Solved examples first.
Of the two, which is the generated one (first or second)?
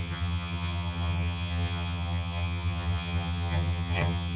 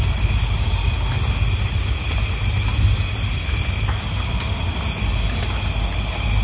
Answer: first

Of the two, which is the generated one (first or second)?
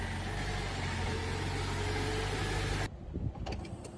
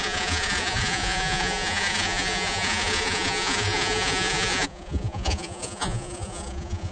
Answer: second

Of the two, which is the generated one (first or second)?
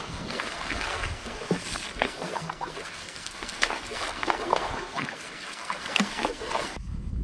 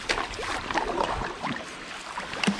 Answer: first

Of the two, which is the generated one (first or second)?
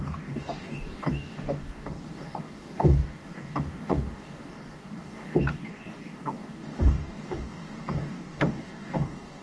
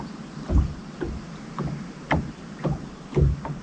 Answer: first